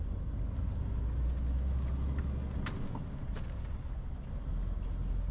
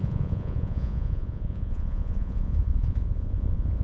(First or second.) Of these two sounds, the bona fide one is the first